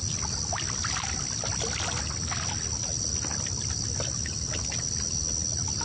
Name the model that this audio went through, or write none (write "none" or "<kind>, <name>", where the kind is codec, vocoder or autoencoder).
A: none